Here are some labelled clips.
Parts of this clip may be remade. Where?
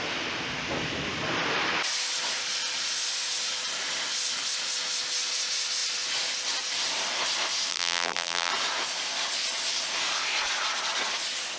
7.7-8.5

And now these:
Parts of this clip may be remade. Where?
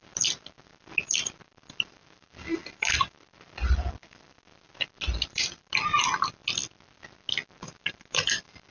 none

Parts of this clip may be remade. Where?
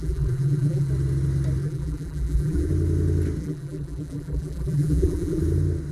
0.0-0.9; 1.6-2.7; 3.4-5.4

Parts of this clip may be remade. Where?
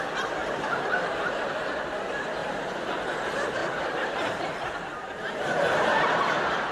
0.4-1.5; 2.4-2.9; 3.6-5.3